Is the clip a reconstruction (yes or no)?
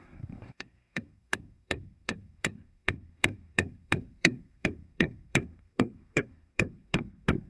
yes